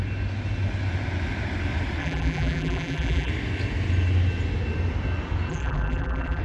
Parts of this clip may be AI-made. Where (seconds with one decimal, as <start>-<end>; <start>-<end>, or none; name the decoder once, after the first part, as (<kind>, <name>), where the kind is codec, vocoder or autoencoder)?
2.0-3.3 (vocoder, BigVGAN v2); 5.5-6.4